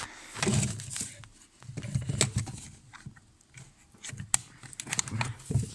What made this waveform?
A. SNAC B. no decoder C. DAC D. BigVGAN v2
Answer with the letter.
B